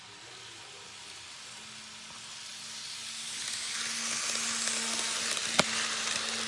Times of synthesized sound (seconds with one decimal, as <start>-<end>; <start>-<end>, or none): none